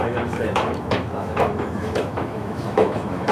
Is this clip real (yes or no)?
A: no